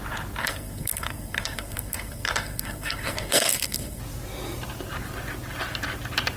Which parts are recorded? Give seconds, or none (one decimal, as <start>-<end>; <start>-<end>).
0.0-0.4; 4.0-6.4